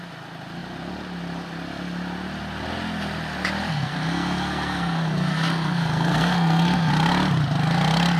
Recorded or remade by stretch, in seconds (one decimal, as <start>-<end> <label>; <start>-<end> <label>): 0.0-3.7 recorded; 3.7-6.9 remade; 6.9-8.2 recorded